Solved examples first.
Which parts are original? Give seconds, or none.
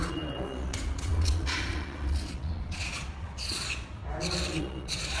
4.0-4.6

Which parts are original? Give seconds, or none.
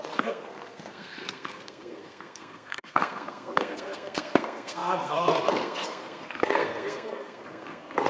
none